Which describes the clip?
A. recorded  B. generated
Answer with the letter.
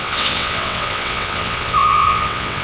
B